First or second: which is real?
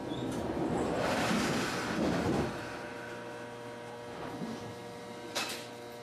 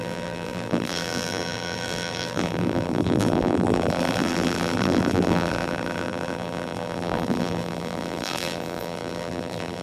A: first